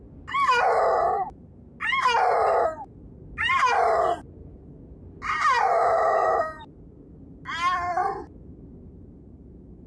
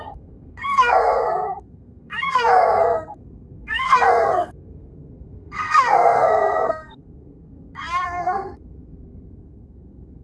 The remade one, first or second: second